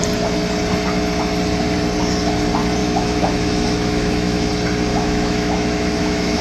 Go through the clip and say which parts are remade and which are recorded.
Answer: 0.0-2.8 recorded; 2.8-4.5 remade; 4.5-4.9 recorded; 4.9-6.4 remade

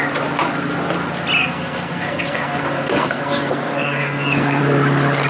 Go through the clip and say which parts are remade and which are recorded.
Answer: 0.0-1.4 recorded; 1.4-4.6 remade; 4.6-5.3 recorded

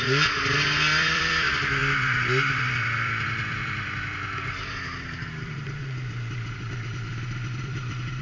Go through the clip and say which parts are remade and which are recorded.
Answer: 0.0-1.8 remade; 1.8-2.5 recorded; 2.5-8.2 remade

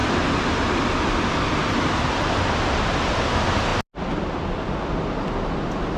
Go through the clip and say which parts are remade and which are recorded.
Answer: 0.0-6.0 recorded

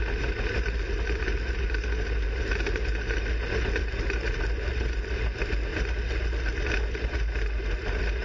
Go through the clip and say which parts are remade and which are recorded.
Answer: 0.0-8.2 recorded